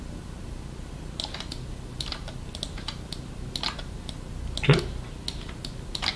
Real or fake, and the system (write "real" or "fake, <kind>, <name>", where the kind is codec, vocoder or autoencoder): real